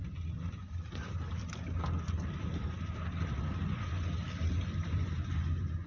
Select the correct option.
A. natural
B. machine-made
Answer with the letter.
A